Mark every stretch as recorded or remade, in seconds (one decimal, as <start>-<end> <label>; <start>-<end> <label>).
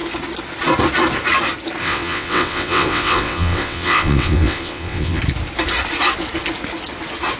0.0-1.8 recorded; 1.8-5.2 remade; 5.2-7.4 recorded